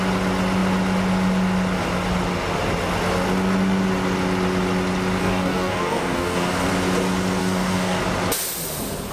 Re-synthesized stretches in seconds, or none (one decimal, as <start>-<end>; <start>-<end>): 5.2-6.7; 7.4-8.0